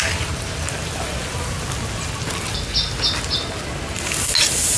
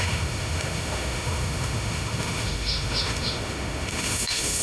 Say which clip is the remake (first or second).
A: second